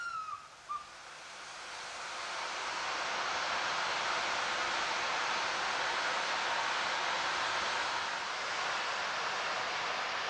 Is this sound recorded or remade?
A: recorded